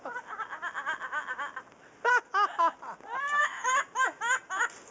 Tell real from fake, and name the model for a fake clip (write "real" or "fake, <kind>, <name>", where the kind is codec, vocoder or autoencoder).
real